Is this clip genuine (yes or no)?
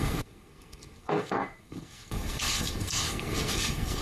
no